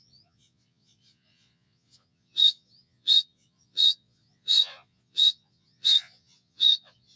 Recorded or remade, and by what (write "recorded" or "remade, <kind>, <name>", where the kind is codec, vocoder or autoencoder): remade, vocoder, Vocos